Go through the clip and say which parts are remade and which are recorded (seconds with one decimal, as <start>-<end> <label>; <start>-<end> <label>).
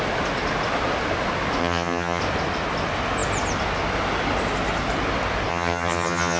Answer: 0.0-1.6 recorded; 1.6-2.2 remade; 2.2-5.5 recorded; 5.5-6.4 remade